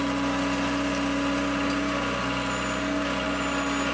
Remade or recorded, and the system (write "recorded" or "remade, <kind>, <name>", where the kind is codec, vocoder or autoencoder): recorded